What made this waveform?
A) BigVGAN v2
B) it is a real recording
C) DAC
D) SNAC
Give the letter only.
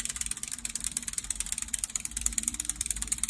A